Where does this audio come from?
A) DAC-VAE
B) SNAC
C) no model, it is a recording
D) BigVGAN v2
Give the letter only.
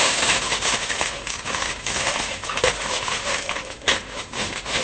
A